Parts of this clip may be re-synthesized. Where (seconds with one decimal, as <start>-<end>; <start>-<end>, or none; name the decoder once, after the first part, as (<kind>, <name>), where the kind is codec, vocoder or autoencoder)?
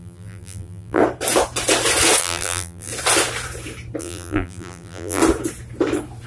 0.0-1.0 (vocoder, BigVGAN v2); 2.2-2.9; 4.0-5.2